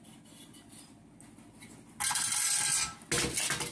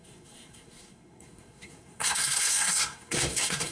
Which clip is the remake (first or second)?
second